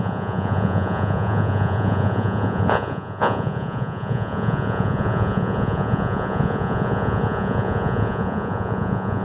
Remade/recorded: remade